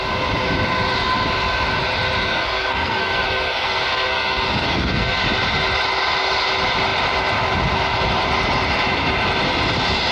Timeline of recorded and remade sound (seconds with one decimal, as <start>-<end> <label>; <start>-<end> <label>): 0.0-2.2 recorded; 2.2-5.2 remade; 5.2-10.1 recorded